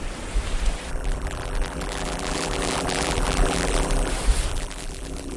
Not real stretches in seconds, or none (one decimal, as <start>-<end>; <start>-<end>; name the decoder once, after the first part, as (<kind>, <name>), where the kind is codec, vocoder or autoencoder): 0.9-4.1 (vocoder, BigVGAN v2); 4.5-5.4